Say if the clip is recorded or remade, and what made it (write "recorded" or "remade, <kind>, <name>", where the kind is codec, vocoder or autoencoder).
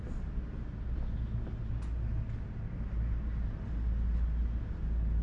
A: recorded